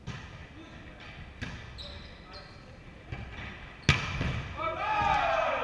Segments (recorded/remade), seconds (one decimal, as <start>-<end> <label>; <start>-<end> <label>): 0.0-5.6 recorded